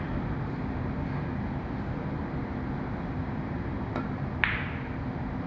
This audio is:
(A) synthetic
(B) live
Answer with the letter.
B